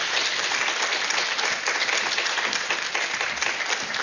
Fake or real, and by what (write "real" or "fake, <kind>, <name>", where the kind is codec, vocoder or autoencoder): real